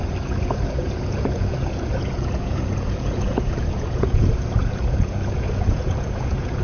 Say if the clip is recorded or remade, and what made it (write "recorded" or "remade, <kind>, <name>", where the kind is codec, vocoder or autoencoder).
remade, vocoder, Vocos